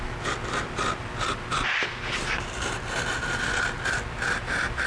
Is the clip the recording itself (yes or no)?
yes